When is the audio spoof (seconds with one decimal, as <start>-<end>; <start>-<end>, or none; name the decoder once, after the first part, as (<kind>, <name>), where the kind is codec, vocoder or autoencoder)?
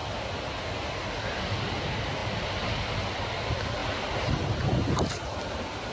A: none